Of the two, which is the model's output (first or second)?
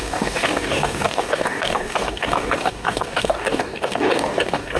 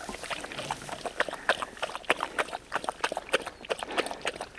first